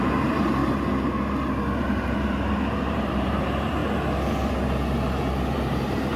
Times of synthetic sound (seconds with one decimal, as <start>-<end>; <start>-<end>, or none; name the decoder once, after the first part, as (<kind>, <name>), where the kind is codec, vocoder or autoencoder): 0.0-0.6 (vocoder, BigVGAN v2); 1.8-3.8; 5.4-6.2